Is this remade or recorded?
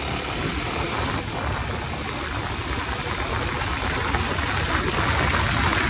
recorded